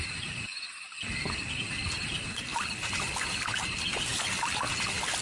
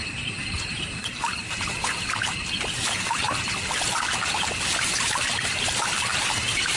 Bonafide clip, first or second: first